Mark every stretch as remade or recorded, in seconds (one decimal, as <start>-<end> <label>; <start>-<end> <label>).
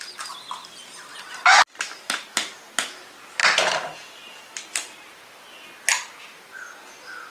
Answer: 0.0-7.3 recorded